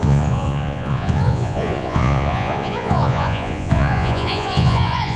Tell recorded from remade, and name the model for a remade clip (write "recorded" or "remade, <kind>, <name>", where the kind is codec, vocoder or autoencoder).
remade, vocoder, Vocos